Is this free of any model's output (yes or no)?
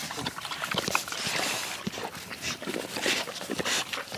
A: yes